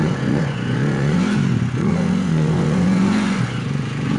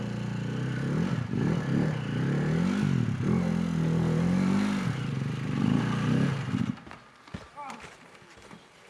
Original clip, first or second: second